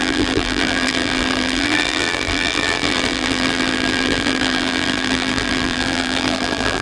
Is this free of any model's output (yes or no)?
no